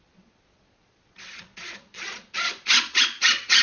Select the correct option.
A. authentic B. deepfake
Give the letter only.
B